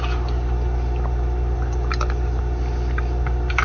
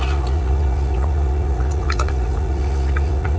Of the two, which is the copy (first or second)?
second